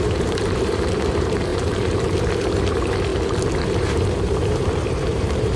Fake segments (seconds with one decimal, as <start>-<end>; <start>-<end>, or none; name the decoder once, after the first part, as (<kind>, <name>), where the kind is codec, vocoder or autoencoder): 0.0-3.1 (vocoder, BigVGAN v2); 3.6-5.6